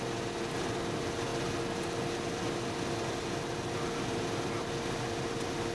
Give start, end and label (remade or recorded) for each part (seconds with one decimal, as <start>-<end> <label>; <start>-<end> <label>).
0.0-5.7 recorded